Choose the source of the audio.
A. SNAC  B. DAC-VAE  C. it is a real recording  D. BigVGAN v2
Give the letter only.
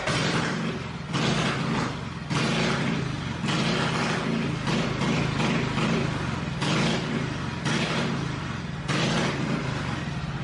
C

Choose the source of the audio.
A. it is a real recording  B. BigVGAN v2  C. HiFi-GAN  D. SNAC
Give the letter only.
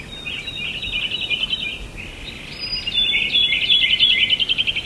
B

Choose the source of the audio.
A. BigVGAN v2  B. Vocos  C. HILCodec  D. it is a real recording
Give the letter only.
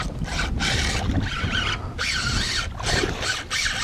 D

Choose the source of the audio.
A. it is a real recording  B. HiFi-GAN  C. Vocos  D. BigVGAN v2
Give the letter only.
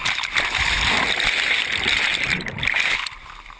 A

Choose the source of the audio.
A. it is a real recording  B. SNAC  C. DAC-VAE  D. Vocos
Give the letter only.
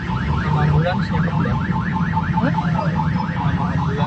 A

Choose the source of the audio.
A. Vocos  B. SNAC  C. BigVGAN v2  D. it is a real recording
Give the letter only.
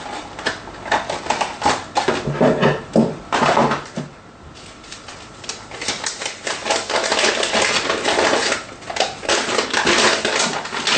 D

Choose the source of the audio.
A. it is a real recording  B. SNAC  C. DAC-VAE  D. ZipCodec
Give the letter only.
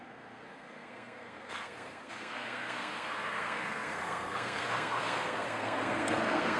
B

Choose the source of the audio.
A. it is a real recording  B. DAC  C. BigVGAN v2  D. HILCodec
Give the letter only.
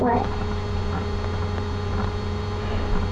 C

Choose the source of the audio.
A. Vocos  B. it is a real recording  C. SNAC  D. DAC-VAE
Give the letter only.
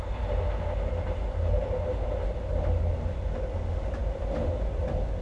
B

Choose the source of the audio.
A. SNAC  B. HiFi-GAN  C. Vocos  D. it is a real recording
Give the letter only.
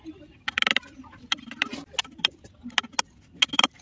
D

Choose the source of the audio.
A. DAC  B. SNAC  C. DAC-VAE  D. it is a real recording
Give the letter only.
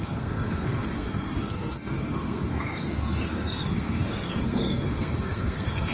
B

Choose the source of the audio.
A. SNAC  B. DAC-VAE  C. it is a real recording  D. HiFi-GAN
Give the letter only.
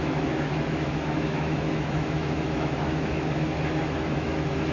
B